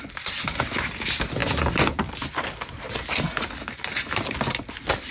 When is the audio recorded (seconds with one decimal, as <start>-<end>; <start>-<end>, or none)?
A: 0.0-5.1